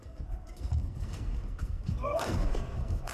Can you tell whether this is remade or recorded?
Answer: remade